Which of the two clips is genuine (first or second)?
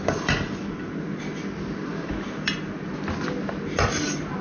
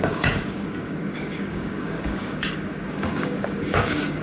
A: first